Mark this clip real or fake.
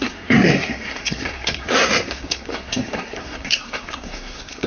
fake